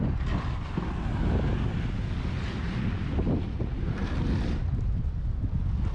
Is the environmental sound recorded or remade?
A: recorded